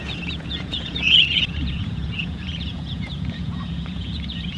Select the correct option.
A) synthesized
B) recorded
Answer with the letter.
A